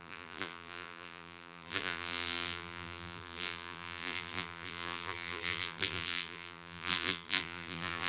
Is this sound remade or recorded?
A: remade